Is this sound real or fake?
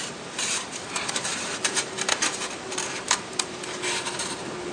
fake